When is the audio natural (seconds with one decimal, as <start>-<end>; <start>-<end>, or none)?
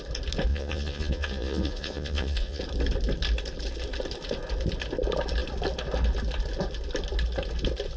0.0-0.5; 2.6-8.0